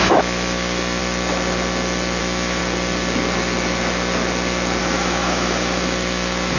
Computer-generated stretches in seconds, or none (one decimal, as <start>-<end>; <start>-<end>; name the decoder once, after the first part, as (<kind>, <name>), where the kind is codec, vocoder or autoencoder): 0.0-1.0 (autoencoder, DAC-VAE); 2.2-2.6; 4.8-6.6